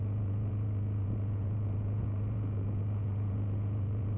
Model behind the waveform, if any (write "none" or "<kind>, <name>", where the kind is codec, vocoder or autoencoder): vocoder, Vocos